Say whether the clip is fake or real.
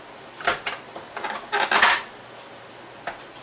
real